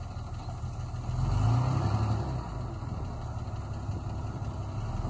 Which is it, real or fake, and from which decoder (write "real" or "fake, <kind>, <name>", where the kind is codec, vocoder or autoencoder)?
real